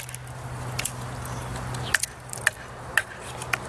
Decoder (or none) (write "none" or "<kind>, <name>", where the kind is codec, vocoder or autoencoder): none